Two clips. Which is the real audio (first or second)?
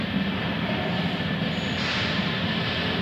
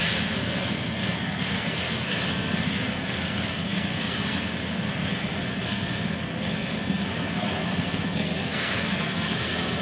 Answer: first